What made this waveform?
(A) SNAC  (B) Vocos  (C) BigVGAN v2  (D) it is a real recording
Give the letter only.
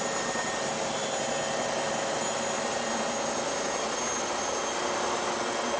D